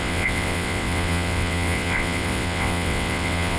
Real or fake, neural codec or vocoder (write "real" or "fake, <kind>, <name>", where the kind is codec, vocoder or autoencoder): fake, vocoder, WaveNeXt